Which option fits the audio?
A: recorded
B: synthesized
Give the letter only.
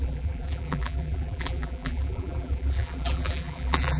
B